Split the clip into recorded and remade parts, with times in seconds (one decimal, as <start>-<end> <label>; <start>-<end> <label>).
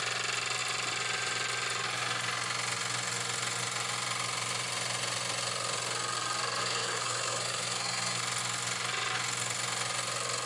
0.0-6.6 recorded; 6.6-8.2 remade; 8.2-10.5 recorded